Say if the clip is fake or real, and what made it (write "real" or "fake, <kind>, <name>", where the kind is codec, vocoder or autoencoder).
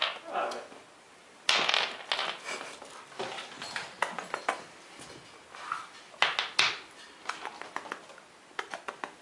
real